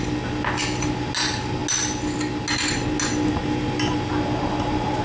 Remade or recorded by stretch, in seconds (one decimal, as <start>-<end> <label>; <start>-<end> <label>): 0.0-5.0 recorded